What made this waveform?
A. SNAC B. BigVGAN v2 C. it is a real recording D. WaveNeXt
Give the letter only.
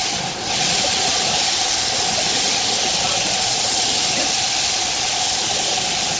C